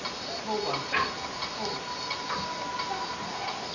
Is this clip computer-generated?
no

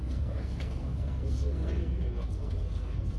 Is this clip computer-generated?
yes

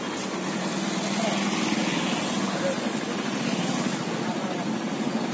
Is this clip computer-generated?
no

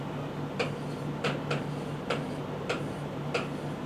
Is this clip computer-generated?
no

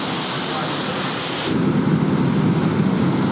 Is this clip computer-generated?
no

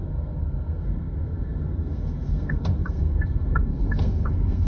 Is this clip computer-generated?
yes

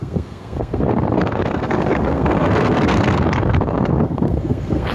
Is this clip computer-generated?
yes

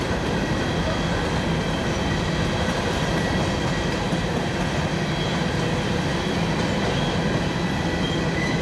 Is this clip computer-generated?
no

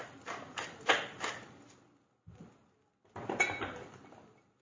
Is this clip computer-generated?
no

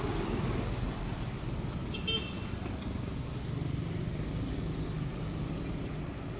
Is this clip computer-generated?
no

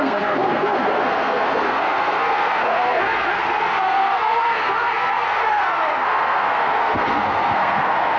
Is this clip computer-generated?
yes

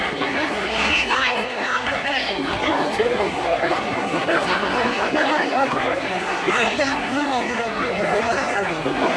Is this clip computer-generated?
yes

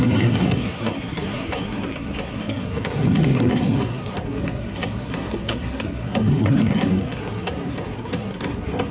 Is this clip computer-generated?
yes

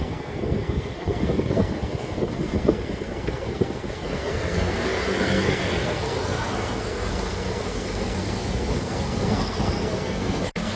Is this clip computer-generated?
yes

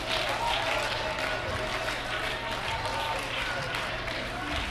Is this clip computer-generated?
no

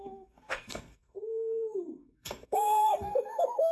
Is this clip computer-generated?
yes